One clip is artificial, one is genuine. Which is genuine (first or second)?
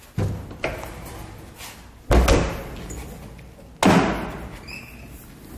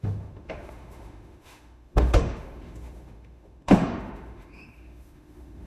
first